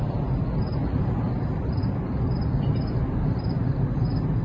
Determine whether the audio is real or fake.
real